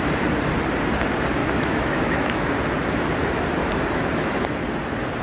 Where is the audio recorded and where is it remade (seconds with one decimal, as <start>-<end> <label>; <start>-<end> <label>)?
0.0-1.4 recorded; 1.4-2.5 remade; 2.5-5.2 recorded